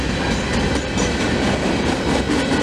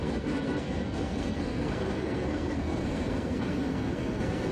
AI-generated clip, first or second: second